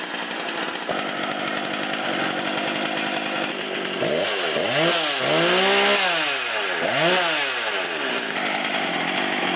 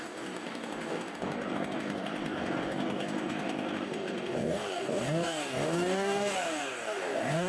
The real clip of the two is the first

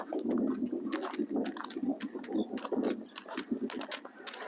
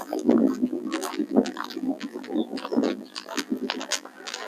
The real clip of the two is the first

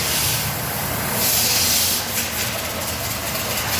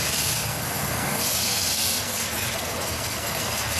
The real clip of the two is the first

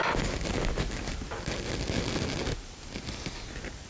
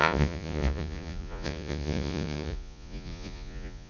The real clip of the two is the first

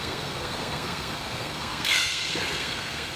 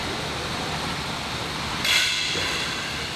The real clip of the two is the second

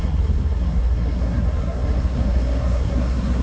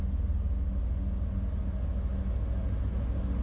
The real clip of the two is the second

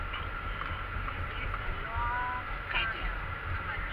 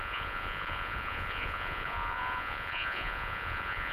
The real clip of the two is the first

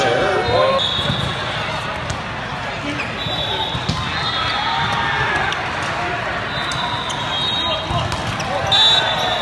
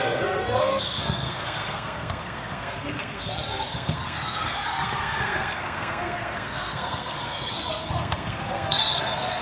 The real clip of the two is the first